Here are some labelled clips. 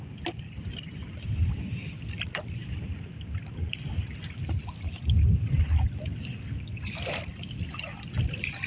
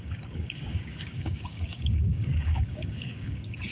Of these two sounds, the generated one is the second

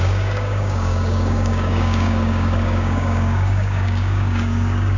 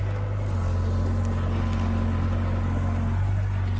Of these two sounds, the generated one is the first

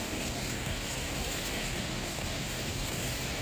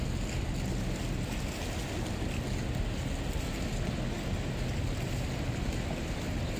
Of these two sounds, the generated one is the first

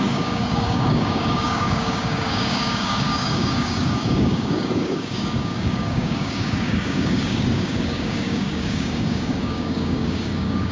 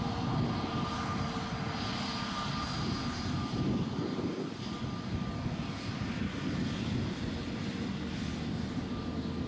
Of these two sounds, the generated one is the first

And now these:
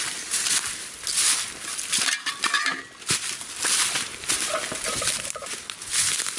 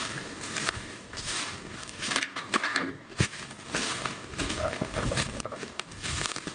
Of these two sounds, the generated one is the second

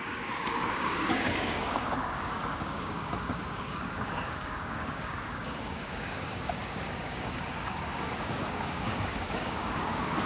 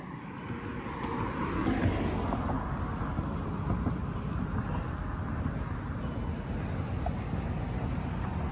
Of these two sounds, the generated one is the first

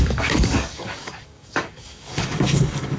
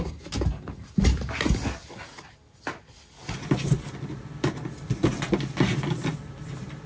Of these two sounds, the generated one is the first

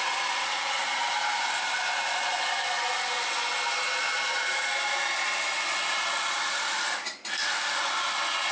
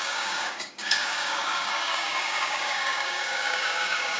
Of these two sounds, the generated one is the second